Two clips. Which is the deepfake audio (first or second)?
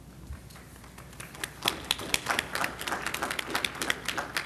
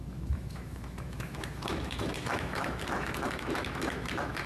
second